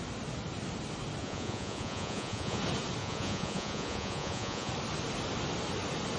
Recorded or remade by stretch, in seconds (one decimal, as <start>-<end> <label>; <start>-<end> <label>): 0.0-1.2 recorded; 1.2-2.6 remade; 2.6-3.0 recorded; 3.0-4.7 remade; 4.7-6.2 recorded